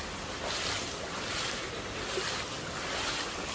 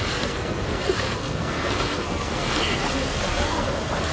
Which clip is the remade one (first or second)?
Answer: second